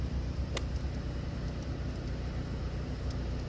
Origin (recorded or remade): recorded